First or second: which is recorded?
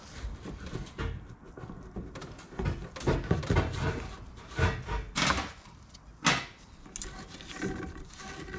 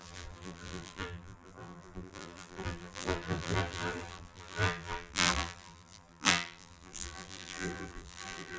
first